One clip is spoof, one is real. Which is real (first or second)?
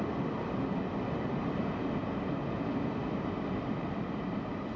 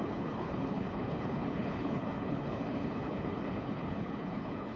first